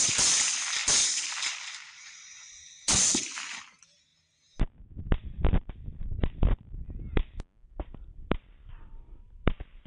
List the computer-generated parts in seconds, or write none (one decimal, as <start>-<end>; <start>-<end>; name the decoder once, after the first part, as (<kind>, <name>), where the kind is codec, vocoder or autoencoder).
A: 0.0-4.1 (vocoder, BigVGAN v2); 5.0-9.9